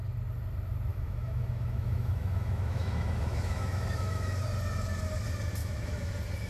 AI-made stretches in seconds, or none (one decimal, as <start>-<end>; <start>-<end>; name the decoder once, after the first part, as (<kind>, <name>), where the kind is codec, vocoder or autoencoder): 0.9-4.4 (autoencoder, DAC-VAE); 5.6-6.1